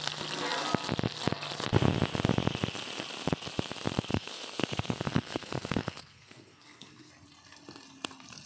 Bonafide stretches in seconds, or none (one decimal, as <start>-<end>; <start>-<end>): 0.0-4.1; 7.1-8.5